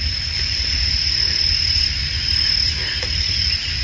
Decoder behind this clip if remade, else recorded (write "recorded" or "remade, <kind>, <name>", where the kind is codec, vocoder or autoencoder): recorded